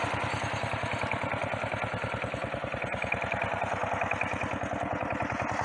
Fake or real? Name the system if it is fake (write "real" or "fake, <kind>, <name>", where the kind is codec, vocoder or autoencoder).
real